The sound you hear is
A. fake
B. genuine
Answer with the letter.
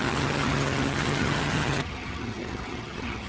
A